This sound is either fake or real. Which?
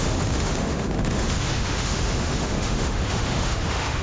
fake